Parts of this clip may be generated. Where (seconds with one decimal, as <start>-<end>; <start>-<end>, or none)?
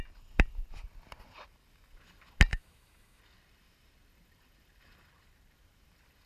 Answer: 2.5-3.2